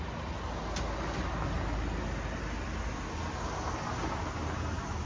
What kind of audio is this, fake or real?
real